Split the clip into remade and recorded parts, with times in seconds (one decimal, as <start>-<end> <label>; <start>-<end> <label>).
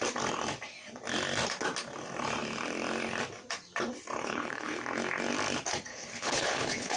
0.0-4.2 recorded; 4.2-4.8 remade; 4.8-5.9 recorded; 5.9-7.0 remade